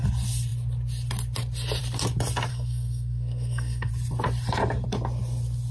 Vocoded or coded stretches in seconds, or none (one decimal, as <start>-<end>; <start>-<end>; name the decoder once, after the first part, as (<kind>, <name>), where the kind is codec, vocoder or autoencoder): 2.5-3.9 (codec, SNAC)